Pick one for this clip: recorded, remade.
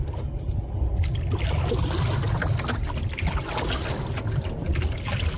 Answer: recorded